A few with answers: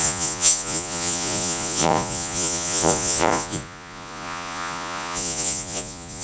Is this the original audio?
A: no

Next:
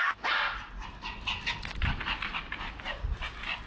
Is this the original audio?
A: yes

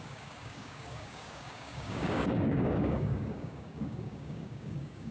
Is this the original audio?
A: no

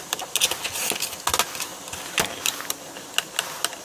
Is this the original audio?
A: yes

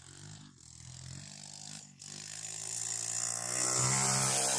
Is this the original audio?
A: yes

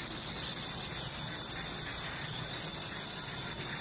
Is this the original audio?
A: yes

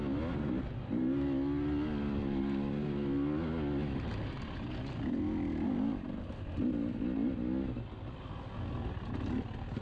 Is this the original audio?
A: yes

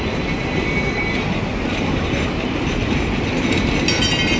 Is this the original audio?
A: yes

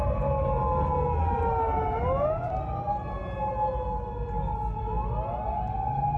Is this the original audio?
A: yes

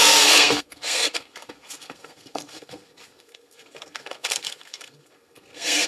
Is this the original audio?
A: no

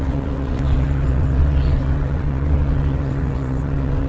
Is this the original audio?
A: no